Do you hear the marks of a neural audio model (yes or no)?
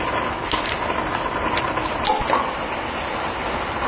no